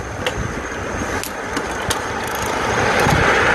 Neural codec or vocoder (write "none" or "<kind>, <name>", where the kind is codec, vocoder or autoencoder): none